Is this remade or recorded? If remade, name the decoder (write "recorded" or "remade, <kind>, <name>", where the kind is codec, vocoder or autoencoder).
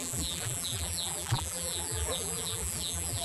remade, vocoder, BigVGAN v2